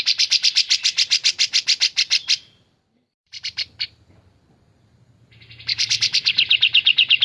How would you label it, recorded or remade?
remade